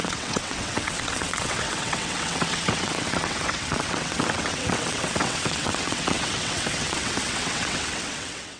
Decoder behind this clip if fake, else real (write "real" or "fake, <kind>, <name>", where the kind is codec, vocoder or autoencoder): fake, vocoder, WaveNeXt